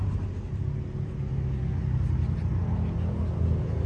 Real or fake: real